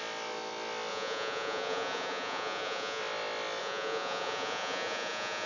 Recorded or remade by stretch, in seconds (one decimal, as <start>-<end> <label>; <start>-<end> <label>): 0.0-0.9 recorded; 0.9-3.0 remade; 3.0-3.6 recorded; 3.6-5.5 remade

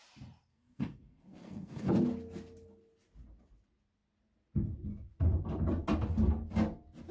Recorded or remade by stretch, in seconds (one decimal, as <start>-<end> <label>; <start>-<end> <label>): 0.0-0.5 recorded; 0.5-1.9 remade; 1.9-7.1 recorded

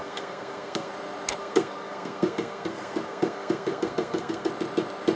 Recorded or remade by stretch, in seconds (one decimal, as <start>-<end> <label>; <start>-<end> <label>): 0.0-0.9 remade; 0.9-1.4 recorded; 1.4-4.5 remade; 4.5-5.2 recorded